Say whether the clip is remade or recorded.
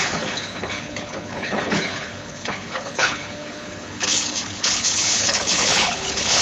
remade